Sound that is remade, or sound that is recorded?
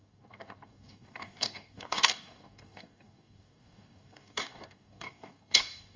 remade